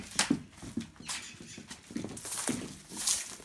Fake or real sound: real